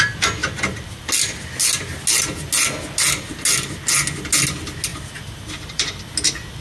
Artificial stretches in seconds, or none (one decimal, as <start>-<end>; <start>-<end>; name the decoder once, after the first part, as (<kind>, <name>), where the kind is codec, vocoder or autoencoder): 4.9-6.0 (vocoder, BigVGAN v2)